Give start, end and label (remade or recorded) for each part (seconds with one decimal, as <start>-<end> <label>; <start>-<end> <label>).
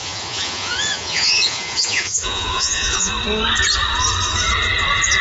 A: 0.0-3.1 remade; 3.1-5.2 recorded